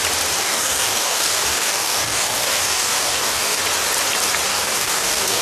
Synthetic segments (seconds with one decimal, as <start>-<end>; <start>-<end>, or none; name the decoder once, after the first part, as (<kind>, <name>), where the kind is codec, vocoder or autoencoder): 0.4-3.6 (codec, DAC); 4.5-5.4

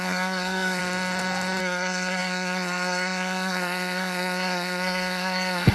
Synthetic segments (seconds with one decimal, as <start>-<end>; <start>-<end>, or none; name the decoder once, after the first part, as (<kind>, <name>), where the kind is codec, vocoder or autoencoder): 0.0-0.8 (codec, SNAC); 1.6-5.7

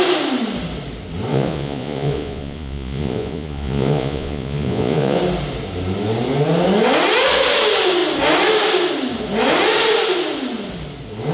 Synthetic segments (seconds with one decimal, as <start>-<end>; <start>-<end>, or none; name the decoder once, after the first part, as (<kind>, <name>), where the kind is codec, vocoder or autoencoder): 1.3-5.2 (vocoder, Vocos)

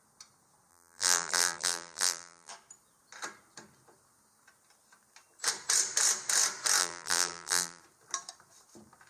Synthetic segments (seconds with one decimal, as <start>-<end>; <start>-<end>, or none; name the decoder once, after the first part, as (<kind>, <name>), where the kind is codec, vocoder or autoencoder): 0.7-2.5 (vocoder, BigVGAN v2); 6.8-7.8

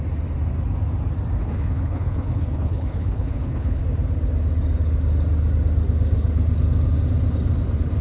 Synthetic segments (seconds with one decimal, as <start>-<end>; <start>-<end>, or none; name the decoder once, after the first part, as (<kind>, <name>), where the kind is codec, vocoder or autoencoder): 1.4-3.8 (codec, HILCodec)

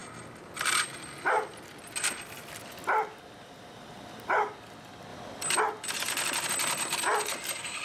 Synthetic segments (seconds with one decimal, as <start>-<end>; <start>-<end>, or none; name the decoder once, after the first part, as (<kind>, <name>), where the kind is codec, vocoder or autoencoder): none

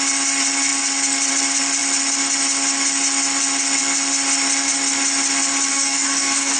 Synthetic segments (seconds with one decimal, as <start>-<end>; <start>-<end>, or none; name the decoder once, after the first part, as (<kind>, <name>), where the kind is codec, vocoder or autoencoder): 5.7-6.6 (codec, DAC)

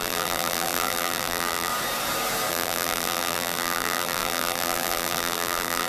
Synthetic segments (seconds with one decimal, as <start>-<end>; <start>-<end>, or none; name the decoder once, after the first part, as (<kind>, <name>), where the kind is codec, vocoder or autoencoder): 0.0-1.7 (vocoder, BigVGAN v2); 2.5-5.9